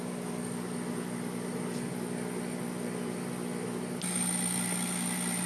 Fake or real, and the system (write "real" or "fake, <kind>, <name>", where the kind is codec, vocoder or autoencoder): real